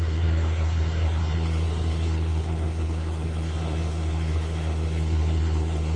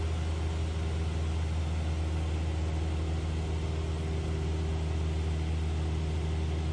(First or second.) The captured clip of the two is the second